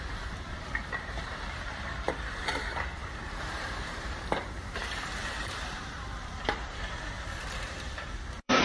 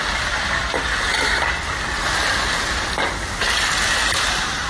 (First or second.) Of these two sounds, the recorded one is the second